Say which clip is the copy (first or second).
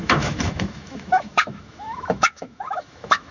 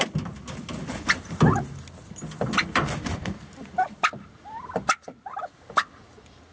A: first